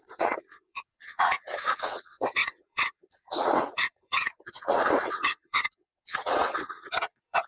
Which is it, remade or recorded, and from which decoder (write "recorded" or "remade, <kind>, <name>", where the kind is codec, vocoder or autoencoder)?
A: remade, vocoder, WaveNeXt